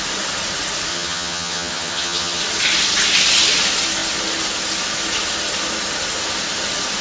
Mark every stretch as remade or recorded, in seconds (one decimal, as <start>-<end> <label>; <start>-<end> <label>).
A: 0.0-0.9 recorded; 0.9-2.4 remade; 2.4-7.0 recorded